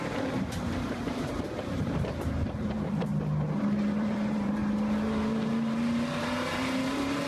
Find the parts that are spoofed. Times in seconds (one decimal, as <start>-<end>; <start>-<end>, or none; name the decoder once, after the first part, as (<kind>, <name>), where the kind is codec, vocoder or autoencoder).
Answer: 0.0-3.1 (vocoder, BigVGAN v2); 3.6-4.6; 6.2-7.3